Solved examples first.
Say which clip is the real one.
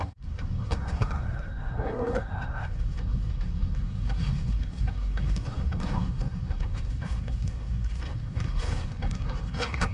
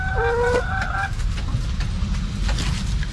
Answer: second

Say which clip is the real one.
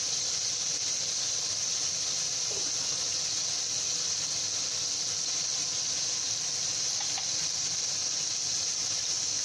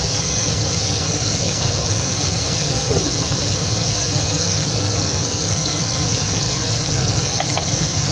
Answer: first